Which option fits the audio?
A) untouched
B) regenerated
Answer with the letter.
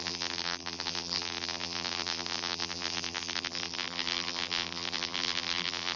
B